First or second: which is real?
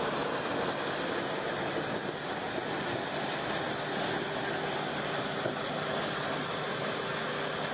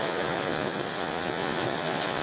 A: first